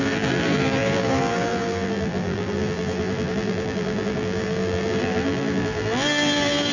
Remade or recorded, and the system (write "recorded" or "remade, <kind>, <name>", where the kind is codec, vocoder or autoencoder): remade, vocoder, BigVGAN v2